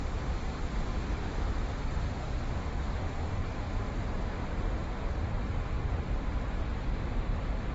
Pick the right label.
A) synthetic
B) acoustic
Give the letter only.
A